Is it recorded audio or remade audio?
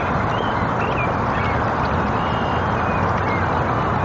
recorded